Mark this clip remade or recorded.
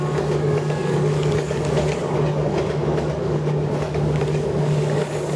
remade